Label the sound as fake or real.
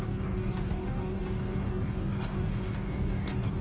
fake